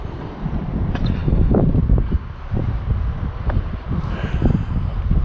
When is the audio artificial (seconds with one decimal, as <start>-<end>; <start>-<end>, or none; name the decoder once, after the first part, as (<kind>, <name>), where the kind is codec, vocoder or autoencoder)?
none